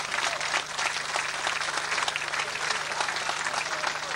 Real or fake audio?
real